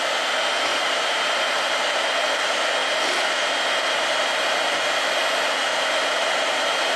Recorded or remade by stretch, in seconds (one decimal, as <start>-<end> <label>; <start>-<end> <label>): 0.0-0.7 recorded; 0.7-2.0 remade; 2.0-5.7 recorded; 5.7-7.0 remade